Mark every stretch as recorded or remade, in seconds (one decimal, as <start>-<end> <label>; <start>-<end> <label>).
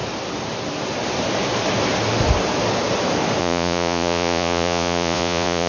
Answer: 0.0-3.4 recorded; 3.4-5.7 remade